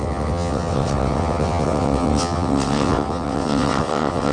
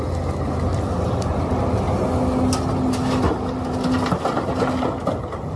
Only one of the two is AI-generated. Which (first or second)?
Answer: first